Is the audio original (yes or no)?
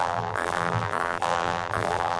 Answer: no